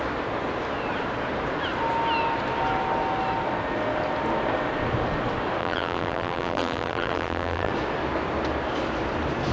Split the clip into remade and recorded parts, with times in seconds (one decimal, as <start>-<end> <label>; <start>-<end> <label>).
0.0-5.6 recorded; 5.6-7.7 remade; 7.7-9.5 recorded